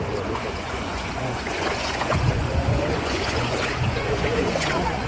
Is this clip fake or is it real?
fake